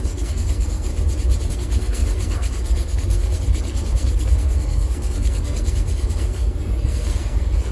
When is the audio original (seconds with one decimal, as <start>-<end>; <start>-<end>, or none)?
0.9-1.5